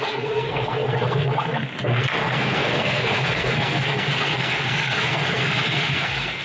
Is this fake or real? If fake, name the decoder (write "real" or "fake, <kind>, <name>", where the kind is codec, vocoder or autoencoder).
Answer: fake, codec, SNAC